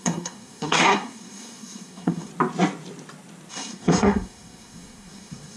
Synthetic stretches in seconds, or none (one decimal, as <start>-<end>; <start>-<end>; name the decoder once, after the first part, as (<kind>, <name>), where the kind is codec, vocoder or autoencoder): 0.0-2.3 (codec, SNAC); 3.5-5.6